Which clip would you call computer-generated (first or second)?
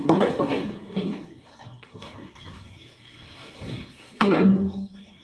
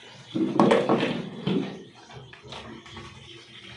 first